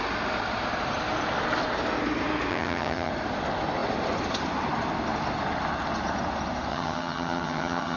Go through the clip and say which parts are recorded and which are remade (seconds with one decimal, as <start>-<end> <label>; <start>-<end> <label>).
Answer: 0.0-2.5 recorded; 2.5-3.1 remade; 3.1-6.7 recorded; 6.7-8.0 remade